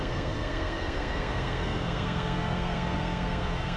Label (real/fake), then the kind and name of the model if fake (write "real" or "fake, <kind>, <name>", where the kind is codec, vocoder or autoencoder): fake, codec, SNAC